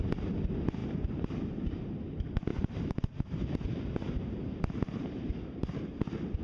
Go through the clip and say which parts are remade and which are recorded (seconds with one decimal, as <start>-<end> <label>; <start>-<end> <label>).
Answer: 0.0-0.8 recorded; 0.8-1.3 remade; 1.3-2.5 recorded; 2.5-5.8 remade; 5.8-6.4 recorded